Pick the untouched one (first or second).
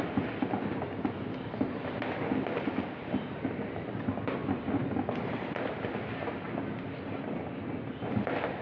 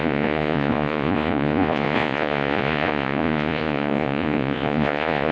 first